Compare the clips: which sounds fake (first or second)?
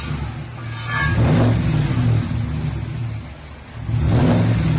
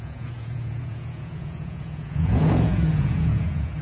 second